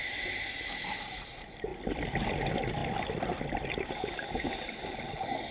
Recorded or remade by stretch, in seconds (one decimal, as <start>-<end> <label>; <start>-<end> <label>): 0.0-5.5 recorded